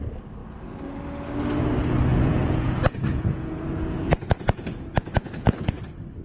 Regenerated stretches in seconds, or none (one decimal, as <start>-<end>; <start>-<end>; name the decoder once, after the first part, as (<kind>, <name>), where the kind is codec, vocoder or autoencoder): 2.1-5.8 (vocoder, Vocos)

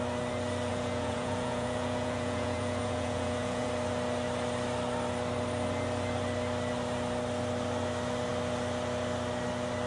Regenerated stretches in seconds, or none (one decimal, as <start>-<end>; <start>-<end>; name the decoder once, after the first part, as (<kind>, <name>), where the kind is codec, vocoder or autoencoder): 0.7-3.7 (vocoder, Vocos)

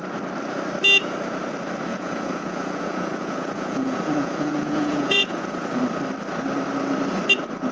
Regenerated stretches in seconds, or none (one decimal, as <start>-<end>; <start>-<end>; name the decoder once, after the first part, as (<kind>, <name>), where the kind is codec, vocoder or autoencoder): 1.9-5.8 (vocoder, Vocos)

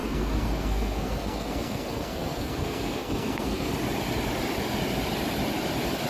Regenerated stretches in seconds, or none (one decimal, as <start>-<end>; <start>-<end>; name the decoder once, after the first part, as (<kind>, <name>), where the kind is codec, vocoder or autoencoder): 0.0-3.7 (codec, SNAC)

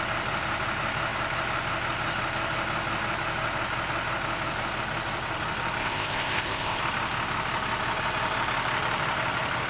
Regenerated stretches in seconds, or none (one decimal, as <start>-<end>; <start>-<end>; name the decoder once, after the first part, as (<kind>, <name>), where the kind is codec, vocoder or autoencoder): 5.8-6.8 (codec, ZipCodec)

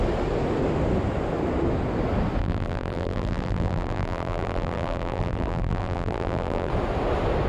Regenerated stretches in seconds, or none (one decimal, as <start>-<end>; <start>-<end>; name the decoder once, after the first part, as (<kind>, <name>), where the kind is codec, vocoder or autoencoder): 2.4-6.7 (vocoder, BigVGAN v2)

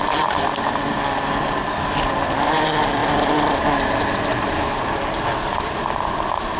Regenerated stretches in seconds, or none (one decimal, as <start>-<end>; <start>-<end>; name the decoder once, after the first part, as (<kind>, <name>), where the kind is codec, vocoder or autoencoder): none

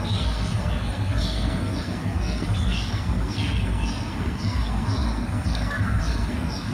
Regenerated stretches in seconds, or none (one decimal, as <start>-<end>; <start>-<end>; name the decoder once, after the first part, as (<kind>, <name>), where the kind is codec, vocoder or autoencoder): 0.0-6.7 (codec, SNAC)